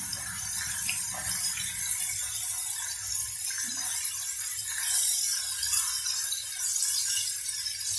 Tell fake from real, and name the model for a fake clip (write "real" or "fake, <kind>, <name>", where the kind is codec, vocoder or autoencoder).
real